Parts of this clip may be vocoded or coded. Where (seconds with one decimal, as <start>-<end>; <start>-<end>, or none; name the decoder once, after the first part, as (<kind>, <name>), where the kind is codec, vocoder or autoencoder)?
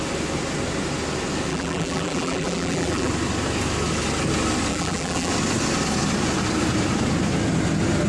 1.5-3.1 (vocoder, BigVGAN v2); 4.7-5.3